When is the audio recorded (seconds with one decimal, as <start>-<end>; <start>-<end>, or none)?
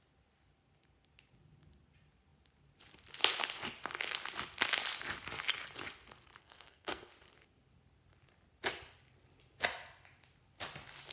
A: 0.0-6.4; 7.1-11.1